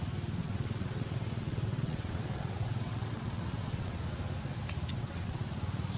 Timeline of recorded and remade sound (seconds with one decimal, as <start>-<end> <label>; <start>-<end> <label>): 0.0-0.4 recorded; 0.4-4.0 remade; 4.0-4.9 recorded; 4.9-5.5 remade; 5.5-6.0 recorded